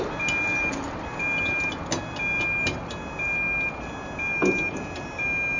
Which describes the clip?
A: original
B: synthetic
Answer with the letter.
A